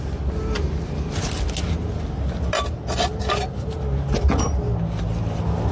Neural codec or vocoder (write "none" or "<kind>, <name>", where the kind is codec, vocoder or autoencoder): none